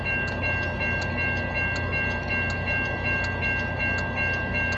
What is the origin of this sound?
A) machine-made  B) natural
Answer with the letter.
B